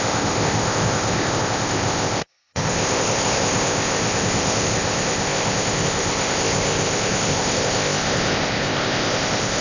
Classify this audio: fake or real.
fake